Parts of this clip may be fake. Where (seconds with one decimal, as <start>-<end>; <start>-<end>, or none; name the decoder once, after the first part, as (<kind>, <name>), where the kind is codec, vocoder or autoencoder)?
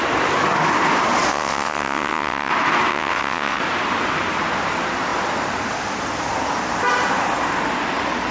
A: 1.3-2.5 (vocoder, WaveNeXt); 2.9-3.6